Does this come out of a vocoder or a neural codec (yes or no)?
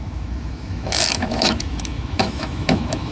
yes